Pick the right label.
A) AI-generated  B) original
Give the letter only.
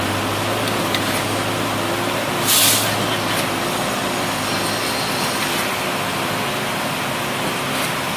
B